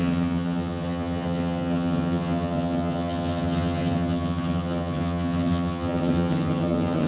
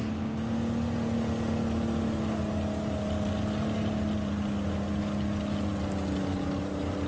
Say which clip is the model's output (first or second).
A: first